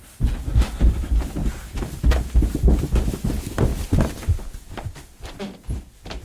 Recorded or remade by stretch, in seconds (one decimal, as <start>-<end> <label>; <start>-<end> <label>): 0.0-0.5 recorded; 0.5-1.4 remade; 1.4-2.8 recorded; 2.8-3.7 remade; 3.7-4.6 recorded; 4.6-6.2 remade